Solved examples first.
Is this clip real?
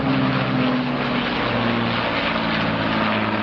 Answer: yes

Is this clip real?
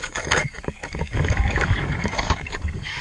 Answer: no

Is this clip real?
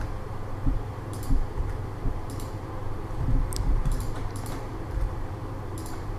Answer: no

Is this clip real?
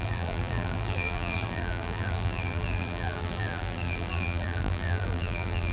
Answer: no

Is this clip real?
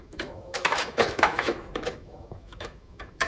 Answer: no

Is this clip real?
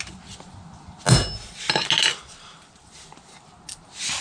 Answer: yes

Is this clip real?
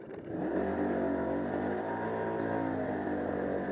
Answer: yes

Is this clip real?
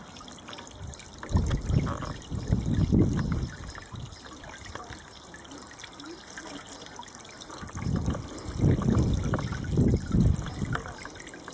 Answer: yes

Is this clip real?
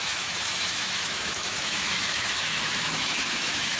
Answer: no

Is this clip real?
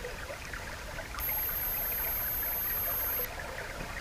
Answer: yes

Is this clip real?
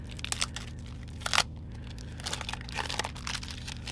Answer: yes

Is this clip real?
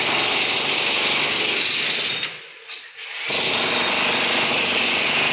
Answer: yes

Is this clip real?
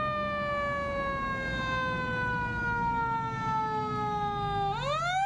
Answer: yes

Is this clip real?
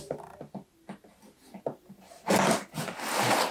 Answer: yes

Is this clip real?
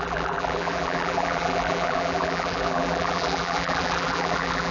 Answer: no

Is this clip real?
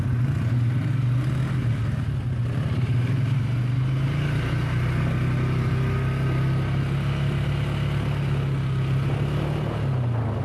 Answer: yes